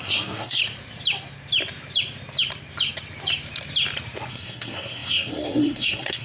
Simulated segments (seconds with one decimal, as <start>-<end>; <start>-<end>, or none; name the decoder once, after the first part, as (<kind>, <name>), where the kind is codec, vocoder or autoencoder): 0.0-0.6 (codec, SNAC); 4.3-6.2